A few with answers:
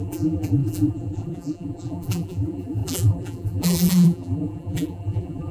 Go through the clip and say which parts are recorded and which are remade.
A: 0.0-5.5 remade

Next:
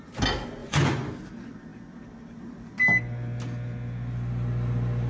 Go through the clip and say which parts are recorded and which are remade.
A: 0.0-0.6 recorded; 0.6-1.1 remade; 1.1-5.1 recorded

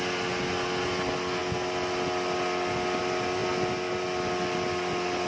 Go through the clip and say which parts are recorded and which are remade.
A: 0.0-5.3 recorded

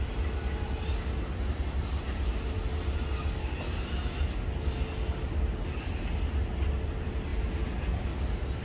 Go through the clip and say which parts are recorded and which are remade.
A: 0.0-8.6 recorded

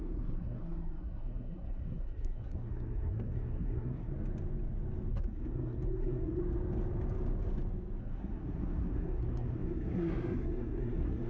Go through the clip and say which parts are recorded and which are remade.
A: 0.0-4.1 remade; 4.1-5.1 recorded; 5.1-6.4 remade; 6.4-8.0 recorded; 8.0-11.3 remade